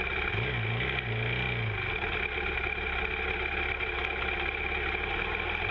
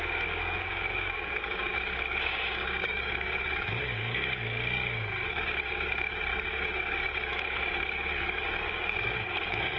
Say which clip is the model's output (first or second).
second